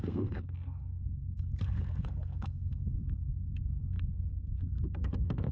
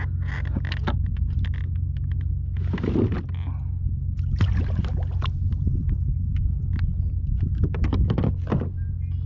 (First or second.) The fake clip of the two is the first